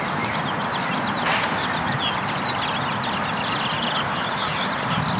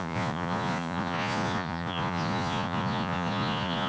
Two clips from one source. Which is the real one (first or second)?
first